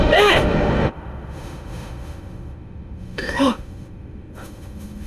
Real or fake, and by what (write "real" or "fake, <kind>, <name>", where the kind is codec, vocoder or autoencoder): fake, autoencoder, DAC-VAE